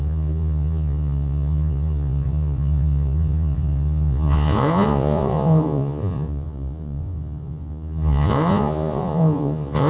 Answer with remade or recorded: remade